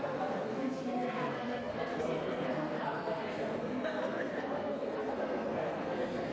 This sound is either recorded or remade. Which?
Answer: remade